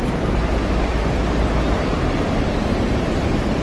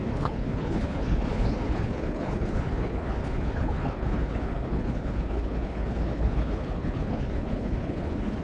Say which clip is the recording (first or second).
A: first